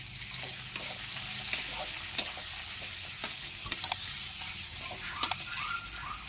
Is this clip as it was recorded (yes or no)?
yes